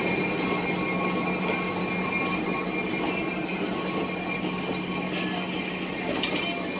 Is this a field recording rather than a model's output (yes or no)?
yes